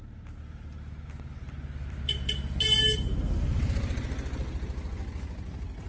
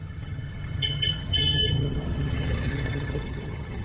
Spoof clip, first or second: second